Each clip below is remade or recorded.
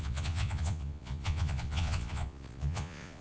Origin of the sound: remade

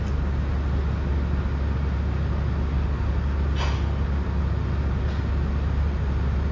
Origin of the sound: recorded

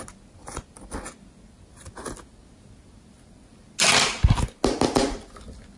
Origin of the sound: recorded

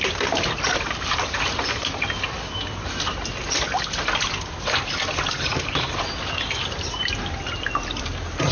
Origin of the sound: remade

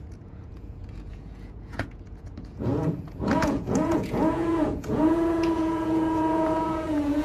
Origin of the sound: remade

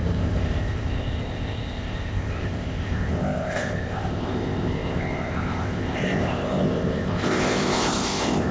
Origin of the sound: remade